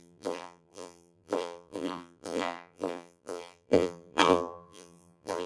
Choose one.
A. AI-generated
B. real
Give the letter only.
A